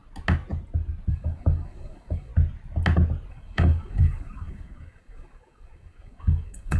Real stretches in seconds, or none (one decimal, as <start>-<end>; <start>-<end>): 0.0-1.1; 2.3-3.3